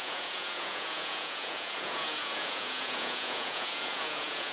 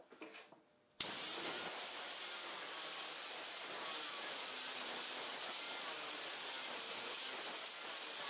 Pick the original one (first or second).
second